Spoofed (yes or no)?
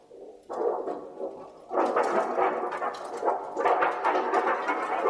no